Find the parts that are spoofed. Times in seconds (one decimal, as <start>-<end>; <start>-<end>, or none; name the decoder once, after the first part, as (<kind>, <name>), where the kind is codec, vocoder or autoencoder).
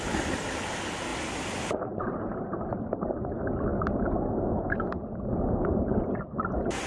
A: none